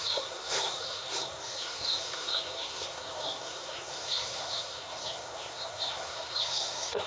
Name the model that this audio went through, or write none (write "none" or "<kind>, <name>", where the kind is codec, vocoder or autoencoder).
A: codec, SNAC